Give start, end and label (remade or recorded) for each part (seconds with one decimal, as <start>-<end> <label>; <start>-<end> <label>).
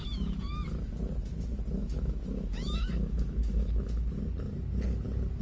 0.0-0.9 remade; 0.9-1.8 recorded; 1.8-4.2 remade; 4.2-5.4 recorded